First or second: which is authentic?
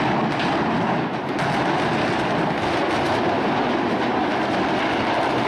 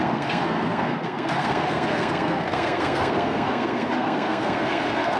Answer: first